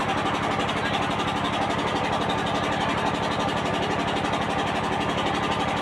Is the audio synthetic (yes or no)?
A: no